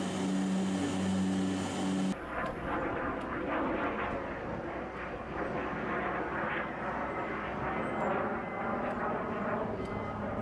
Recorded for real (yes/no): yes